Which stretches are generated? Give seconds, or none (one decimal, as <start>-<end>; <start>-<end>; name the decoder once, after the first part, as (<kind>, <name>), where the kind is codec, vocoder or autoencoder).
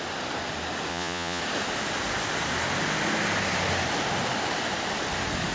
0.9-1.4 (vocoder, Vocos)